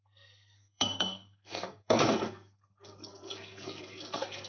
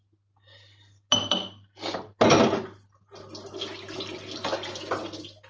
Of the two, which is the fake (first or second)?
first